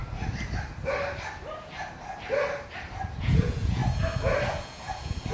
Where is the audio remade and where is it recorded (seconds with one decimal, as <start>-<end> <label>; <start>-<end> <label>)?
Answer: 0.0-3.2 recorded; 3.2-3.8 remade; 3.8-4.5 recorded; 4.5-5.3 remade